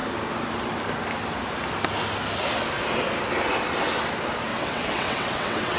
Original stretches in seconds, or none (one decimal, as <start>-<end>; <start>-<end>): 0.0-4.5